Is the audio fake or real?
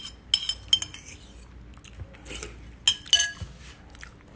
real